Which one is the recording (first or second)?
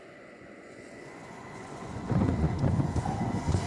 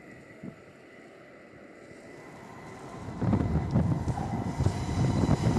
second